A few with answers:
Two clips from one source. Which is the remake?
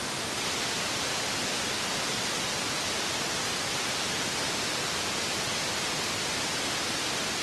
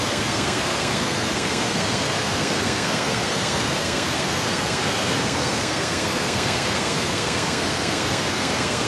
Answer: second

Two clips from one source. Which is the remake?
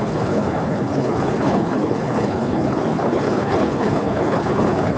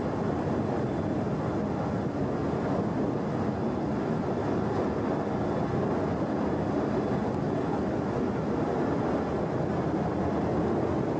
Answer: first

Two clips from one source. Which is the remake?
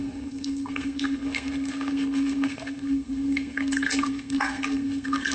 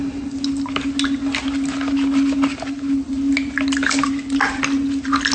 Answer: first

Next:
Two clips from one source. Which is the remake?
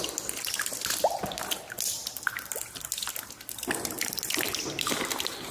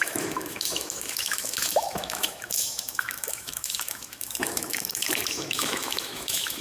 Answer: second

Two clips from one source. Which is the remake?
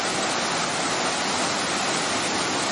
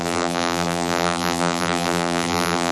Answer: second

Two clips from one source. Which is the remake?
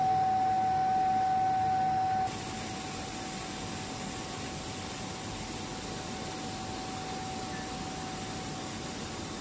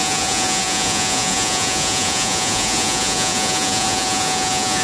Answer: second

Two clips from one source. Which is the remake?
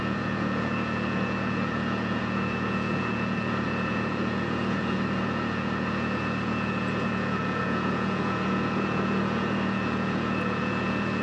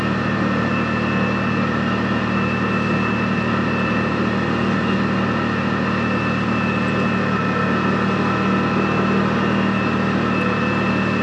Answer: first